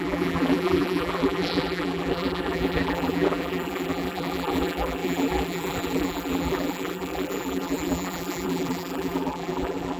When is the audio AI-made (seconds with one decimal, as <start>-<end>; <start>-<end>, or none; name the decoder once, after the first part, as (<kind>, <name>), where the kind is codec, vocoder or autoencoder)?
0.0-10.0 (vocoder, BigVGAN v2)